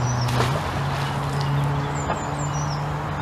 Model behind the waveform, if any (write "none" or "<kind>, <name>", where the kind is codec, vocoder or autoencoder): none